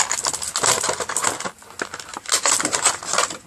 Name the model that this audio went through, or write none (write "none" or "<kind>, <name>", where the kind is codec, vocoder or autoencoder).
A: none